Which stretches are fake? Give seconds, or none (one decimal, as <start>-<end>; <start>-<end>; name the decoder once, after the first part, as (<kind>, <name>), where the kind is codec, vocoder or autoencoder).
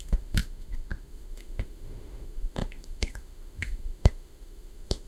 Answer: 0.0-5.1 (autoencoder, DAC-VAE)